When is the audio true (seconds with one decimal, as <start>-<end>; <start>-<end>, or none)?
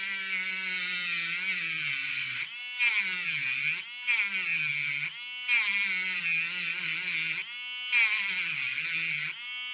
0.0-2.0; 2.6-9.7